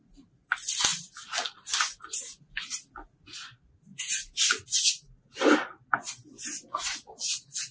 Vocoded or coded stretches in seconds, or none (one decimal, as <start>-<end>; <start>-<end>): none